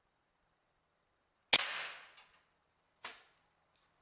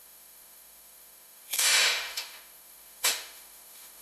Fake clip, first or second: second